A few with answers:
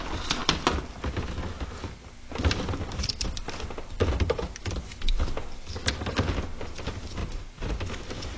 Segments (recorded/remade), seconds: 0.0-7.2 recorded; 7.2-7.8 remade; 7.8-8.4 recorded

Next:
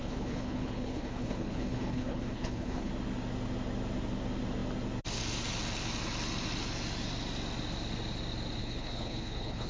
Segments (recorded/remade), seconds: 0.0-2.9 remade; 2.9-8.6 recorded; 8.6-9.7 remade